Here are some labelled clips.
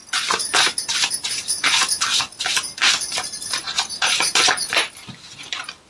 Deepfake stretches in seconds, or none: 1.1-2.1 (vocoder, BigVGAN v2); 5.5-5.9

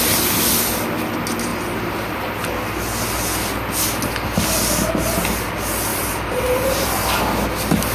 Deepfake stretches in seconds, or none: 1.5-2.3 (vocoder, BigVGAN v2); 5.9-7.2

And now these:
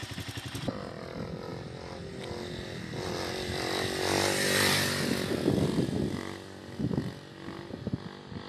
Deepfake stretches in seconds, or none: none